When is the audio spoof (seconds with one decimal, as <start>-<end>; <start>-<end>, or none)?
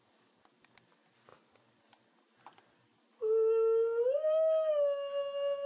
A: none